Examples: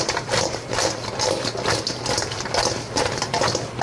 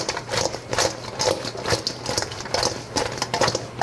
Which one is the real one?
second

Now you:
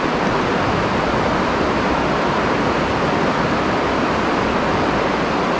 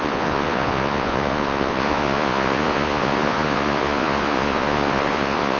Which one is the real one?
first